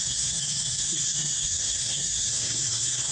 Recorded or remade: remade